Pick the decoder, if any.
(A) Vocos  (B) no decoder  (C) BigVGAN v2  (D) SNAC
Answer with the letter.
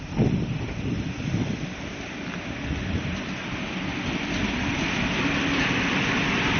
B